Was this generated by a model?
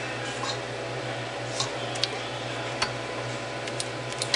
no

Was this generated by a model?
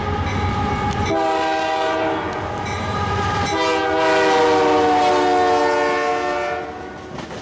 no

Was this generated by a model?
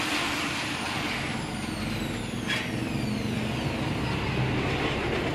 no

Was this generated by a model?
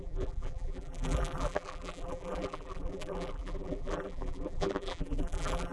yes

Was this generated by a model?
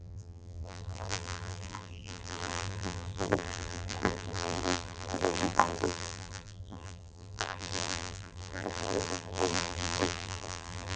yes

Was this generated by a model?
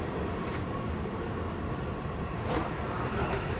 yes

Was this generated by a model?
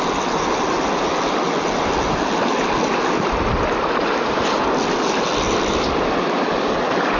no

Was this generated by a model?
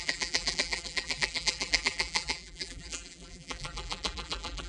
yes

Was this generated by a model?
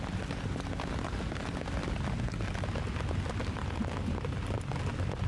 no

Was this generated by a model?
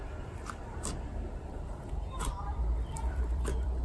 yes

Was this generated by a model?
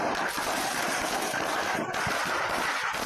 yes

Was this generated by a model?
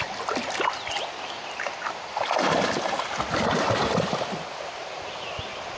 no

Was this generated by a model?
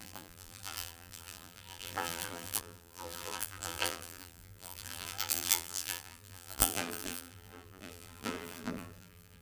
yes